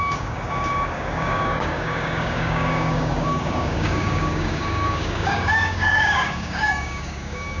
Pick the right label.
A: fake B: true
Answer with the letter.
A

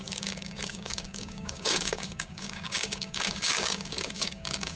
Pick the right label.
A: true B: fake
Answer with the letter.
B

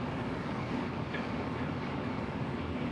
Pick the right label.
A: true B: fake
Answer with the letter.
B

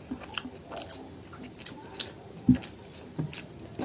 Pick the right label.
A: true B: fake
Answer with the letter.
A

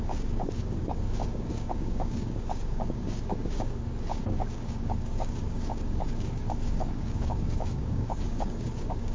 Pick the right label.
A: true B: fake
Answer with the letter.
B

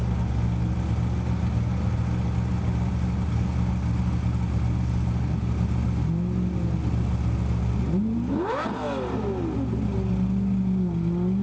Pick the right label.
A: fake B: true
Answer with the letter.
B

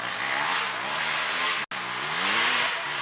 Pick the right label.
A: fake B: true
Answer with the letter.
B